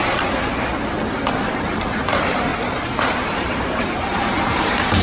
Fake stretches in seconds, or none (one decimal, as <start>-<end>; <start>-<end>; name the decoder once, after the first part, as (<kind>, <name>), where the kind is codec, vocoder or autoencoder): 1.5-2.5 (vocoder, BigVGAN v2); 3.4-5.0

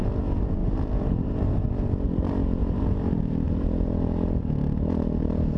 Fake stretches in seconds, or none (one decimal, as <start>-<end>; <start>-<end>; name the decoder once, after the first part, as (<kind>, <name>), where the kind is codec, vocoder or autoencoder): 0.6-1.6 (vocoder, BigVGAN v2); 2.6-3.7

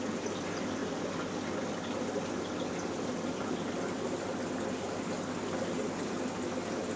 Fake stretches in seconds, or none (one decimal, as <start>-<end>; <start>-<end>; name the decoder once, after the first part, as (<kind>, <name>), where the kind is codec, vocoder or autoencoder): none

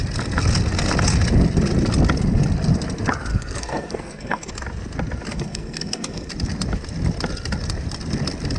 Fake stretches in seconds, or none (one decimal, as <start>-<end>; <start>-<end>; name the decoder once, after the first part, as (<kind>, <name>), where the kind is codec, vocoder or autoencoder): 3.3-4.5 (codec, SNAC); 5.3-6.3

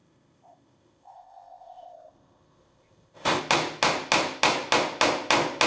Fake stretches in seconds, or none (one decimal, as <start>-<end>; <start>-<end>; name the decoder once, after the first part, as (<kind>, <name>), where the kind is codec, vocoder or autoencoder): 0.0-3.4 (codec, ZipCodec)

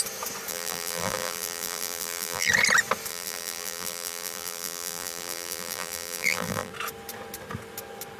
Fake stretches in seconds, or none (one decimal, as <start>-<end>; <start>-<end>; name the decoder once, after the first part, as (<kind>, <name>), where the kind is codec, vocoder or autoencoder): 0.5-2.5 (vocoder, BigVGAN v2); 3.1-6.7